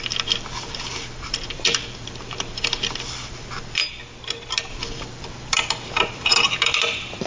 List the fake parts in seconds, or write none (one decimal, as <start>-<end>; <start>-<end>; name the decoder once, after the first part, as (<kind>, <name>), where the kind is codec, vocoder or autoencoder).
0.0-3.8 (vocoder, BigVGAN v2); 4.7-7.3